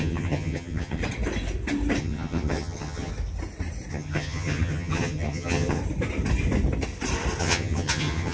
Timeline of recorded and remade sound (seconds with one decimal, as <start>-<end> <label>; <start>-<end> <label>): 0.0-1.0 remade; 1.0-2.0 recorded; 2.0-3.1 remade; 3.1-3.9 recorded; 3.9-5.8 remade; 5.8-7.4 recorded; 7.4-8.3 remade